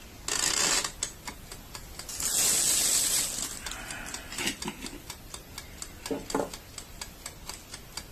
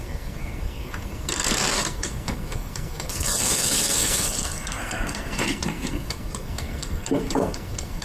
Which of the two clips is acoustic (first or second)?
first